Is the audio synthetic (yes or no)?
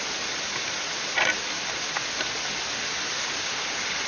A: no